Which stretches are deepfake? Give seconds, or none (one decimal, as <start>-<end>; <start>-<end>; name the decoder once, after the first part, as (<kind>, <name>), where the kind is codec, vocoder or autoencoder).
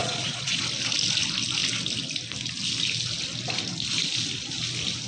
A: 0.0-0.6 (vocoder, Vocos)